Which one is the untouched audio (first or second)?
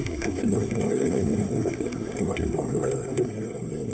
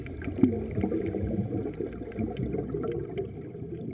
second